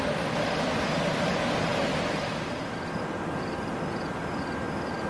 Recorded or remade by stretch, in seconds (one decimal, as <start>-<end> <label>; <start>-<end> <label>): 0.0-5.1 recorded